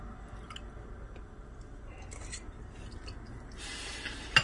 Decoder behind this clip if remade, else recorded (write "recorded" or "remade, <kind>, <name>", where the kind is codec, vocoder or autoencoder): recorded